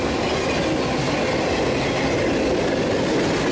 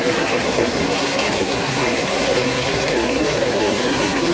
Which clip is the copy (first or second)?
second